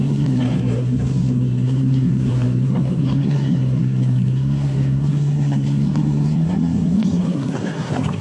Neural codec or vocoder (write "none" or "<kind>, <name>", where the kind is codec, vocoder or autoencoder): codec, SNAC